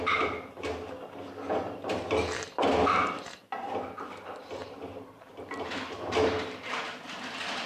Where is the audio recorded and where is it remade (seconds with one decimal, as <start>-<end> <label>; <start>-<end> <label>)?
0.0-4.6 recorded; 4.6-7.2 remade; 7.2-7.7 recorded